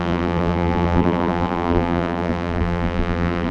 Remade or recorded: remade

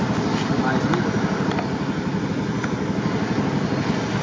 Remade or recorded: recorded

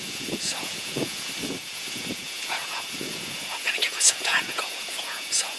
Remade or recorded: remade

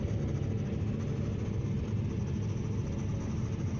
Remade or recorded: recorded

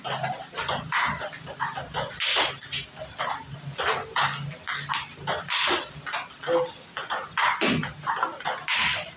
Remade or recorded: recorded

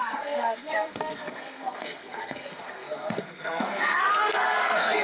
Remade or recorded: remade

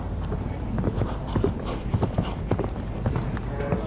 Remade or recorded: remade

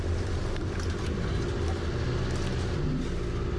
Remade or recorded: recorded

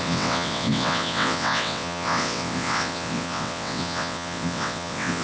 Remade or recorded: remade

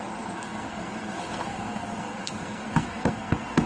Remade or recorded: remade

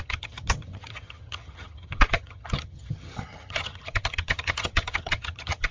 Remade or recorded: remade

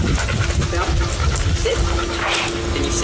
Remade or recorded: recorded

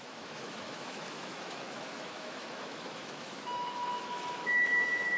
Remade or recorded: remade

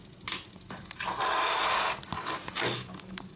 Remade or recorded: recorded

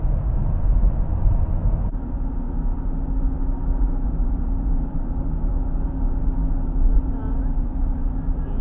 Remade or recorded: recorded